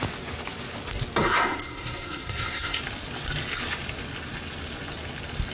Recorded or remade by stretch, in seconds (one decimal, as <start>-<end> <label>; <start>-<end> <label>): 0.0-1.2 recorded; 1.2-2.8 remade; 2.8-5.5 recorded